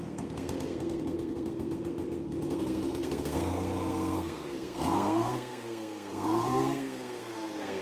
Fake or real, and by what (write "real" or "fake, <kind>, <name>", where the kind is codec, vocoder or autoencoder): fake, codec, SNAC